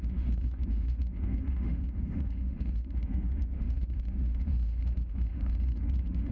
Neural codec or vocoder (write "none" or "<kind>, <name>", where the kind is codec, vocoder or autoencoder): autoencoder, DAC-VAE